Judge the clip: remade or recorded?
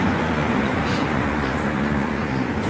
remade